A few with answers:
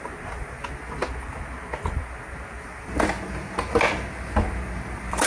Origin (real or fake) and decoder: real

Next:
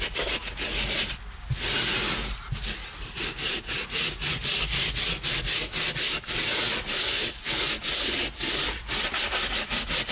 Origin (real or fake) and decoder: real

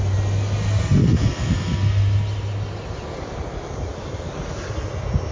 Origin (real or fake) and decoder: real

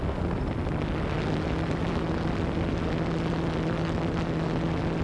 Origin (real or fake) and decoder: real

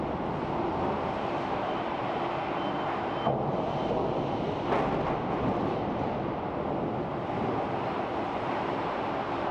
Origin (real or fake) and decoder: real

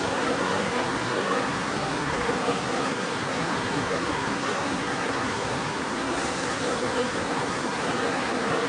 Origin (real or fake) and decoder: fake, codec, SNAC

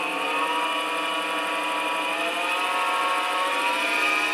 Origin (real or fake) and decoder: real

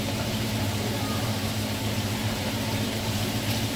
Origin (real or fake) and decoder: fake, vocoder, BigVGAN v2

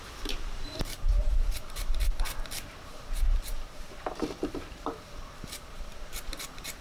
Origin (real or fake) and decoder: fake, vocoder, BigVGAN v2